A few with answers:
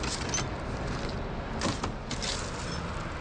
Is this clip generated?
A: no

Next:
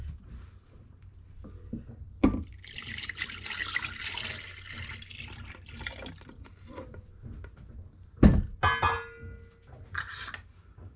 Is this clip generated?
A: no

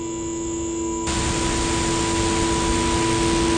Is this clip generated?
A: no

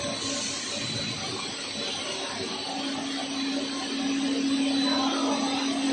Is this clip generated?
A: no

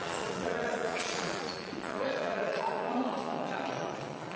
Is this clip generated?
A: yes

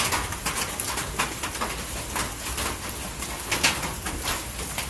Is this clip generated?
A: no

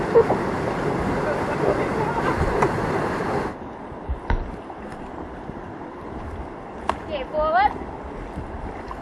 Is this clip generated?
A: no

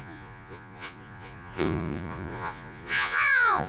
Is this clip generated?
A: yes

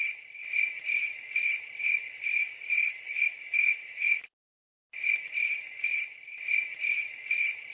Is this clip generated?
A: no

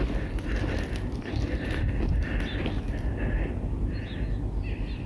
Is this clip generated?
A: no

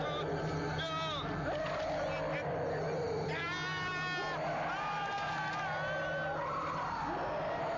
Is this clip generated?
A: no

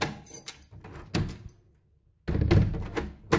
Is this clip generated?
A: no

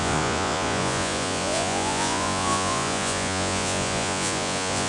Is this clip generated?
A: yes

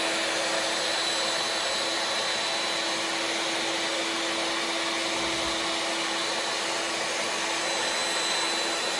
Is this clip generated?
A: no